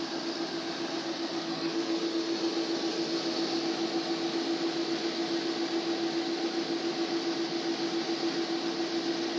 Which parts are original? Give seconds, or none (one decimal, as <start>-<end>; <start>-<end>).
0.0-1.4; 2.0-9.4